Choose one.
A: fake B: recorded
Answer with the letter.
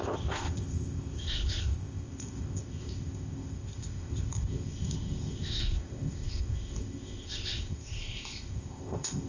A